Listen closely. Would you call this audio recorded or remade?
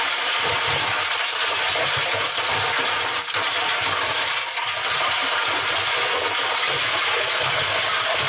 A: recorded